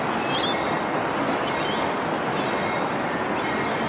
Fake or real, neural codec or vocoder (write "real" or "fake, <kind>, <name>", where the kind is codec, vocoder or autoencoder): real